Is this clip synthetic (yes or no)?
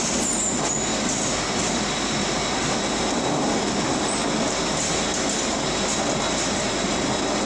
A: no